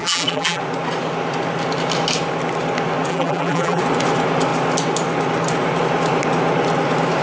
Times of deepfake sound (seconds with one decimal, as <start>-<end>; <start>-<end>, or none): 0.0-0.6; 3.1-3.8

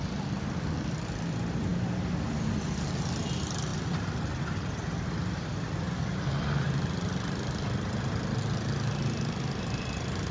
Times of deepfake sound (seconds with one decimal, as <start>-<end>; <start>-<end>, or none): none

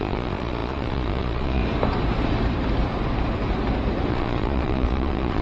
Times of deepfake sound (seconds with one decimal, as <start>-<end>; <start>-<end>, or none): 0.0-1.6; 4.1-5.4

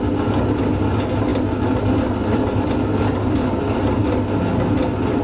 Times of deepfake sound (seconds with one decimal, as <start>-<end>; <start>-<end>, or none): none

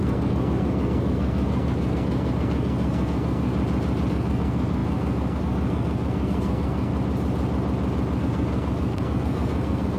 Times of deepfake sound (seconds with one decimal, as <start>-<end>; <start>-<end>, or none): 0.0-3.5; 4.1-6.9; 8.2-10.0

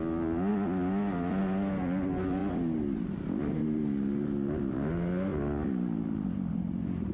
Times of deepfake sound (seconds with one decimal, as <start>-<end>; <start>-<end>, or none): none

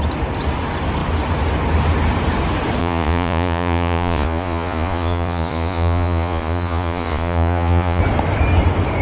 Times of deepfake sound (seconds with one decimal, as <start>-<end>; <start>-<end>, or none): 2.8-8.0